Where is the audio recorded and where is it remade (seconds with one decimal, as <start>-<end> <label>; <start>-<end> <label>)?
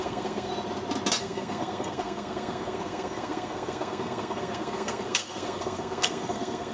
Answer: 0.0-0.5 remade; 0.5-1.2 recorded; 1.2-6.7 remade